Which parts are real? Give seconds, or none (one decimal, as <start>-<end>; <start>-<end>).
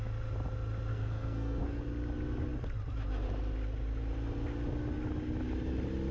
0.0-0.9; 1.8-6.1